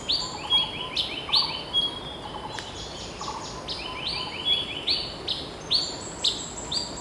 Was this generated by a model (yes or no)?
no